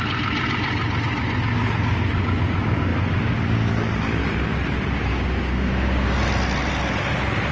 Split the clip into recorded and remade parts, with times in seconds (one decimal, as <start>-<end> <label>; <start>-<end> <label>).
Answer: 0.0-5.1 recorded; 5.1-6.2 remade; 6.2-7.5 recorded